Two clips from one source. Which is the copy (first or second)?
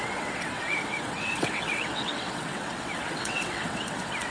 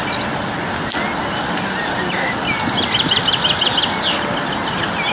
first